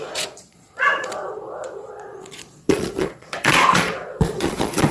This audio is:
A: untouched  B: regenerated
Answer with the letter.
B